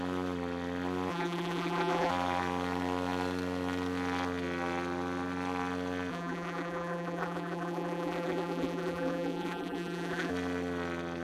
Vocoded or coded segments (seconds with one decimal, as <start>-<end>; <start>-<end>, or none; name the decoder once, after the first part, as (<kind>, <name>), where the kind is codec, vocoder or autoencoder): 1.1-2.1 (vocoder, BigVGAN v2); 6.1-10.3